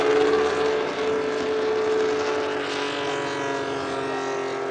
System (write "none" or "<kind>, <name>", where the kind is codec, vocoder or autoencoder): none